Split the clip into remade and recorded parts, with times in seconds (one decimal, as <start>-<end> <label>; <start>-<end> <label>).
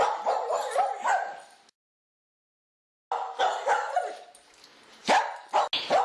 0.0-6.0 recorded